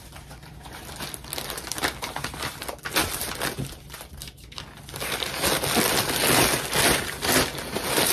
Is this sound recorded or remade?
recorded